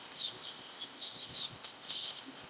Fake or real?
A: fake